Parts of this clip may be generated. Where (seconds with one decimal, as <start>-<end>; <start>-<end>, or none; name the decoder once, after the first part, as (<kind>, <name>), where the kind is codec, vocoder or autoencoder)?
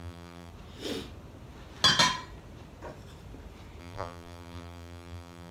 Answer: 0.0-0.5 (vocoder, BigVGAN v2); 3.8-5.5